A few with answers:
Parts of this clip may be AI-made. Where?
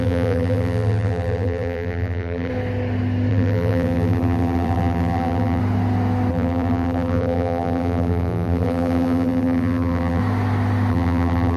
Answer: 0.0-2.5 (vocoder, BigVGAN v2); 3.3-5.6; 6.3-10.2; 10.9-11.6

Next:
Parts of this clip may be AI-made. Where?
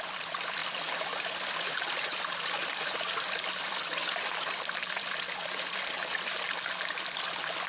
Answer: none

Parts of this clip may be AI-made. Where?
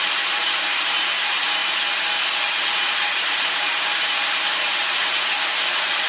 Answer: 0.0-1.6 (vocoder, BigVGAN v2); 2.8-6.1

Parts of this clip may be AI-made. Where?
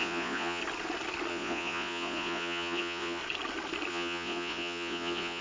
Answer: 0.0-0.6 (vocoder, Vocos); 1.3-3.2; 3.9-5.4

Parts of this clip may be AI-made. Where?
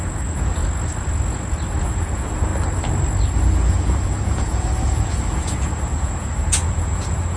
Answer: 0.0-0.6 (vocoder, Vocos); 1.8-2.5; 3.5-7.4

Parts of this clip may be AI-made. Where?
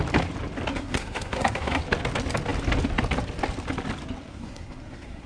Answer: 0.7-1.8 (codec, SNAC); 4.3-5.3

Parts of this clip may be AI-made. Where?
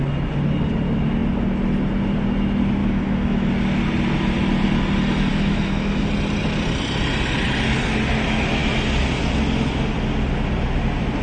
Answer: 2.8-3.5 (autoencoder, DAC-VAE); 5.3-6.1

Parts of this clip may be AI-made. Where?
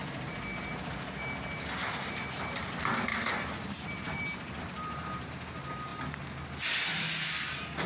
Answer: 3.1-5.3 (vocoder, BigVGAN v2)